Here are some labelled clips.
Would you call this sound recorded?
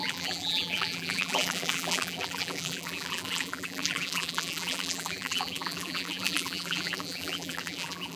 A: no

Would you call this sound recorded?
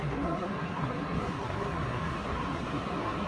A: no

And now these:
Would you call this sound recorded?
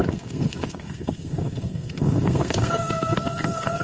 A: no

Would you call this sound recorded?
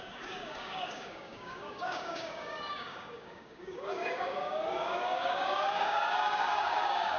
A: no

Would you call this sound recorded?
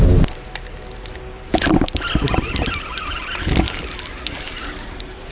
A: yes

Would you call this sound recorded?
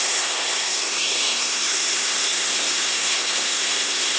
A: no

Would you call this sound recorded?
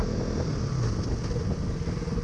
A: yes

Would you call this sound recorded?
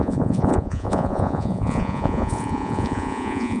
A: no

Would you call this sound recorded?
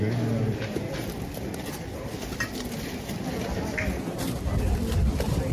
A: yes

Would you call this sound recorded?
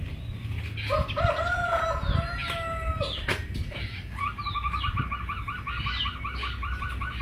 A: yes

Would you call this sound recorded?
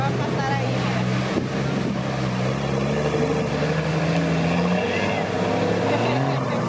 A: yes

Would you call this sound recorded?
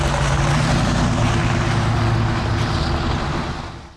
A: yes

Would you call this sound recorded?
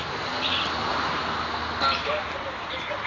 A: yes